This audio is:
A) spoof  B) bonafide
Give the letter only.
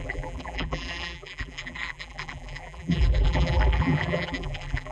A